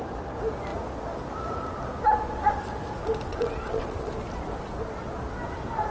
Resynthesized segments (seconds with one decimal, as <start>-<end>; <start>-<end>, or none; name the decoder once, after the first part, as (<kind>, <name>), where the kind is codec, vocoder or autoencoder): 3.3-4.1 (vocoder, WaveNeXt)